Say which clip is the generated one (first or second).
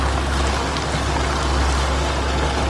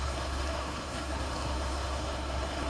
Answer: second